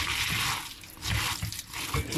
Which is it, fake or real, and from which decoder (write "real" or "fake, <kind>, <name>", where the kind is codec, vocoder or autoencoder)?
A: real